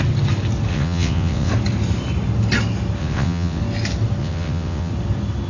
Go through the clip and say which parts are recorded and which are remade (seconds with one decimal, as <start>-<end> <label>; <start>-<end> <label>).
0.0-0.7 recorded; 0.7-1.5 remade; 1.5-3.0 recorded; 3.0-3.6 remade; 3.6-4.2 recorded; 4.2-4.9 remade; 4.9-5.5 recorded